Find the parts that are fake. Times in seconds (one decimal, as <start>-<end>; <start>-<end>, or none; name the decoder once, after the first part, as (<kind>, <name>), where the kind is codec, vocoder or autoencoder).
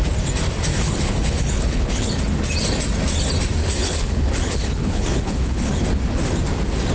0.7-2.1 (codec, HILCodec); 3.6-5.7